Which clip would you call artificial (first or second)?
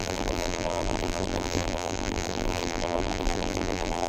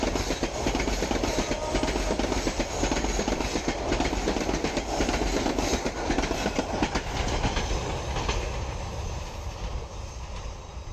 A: first